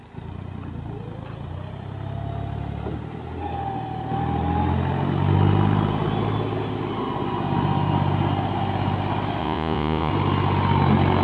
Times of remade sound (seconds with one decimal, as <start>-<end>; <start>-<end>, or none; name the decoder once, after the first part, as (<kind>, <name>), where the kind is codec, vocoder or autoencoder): 9.4-10.1 (vocoder, Vocos)